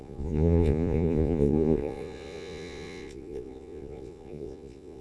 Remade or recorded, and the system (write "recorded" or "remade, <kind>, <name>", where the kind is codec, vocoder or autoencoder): remade, vocoder, Vocos